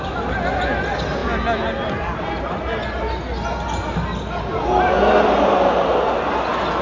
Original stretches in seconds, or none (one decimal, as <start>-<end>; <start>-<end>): 0.0-6.8